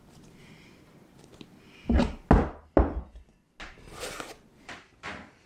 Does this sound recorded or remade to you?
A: recorded